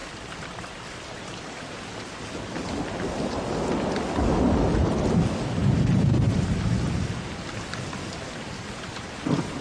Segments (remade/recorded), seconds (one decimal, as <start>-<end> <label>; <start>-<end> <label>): 0.0-1.7 remade; 1.7-9.6 recorded